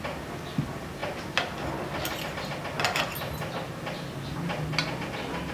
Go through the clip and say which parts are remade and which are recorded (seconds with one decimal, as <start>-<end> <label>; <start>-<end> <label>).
0.0-5.5 recorded